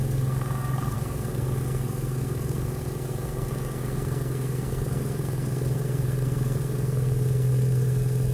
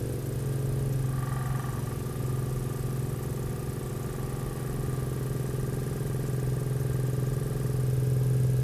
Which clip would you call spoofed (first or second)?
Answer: first